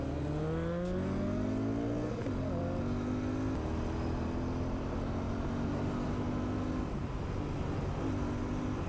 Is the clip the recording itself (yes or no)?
yes